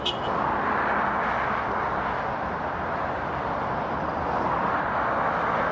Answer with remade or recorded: recorded